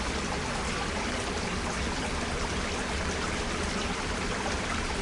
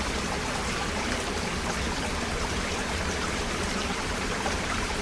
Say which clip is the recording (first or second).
first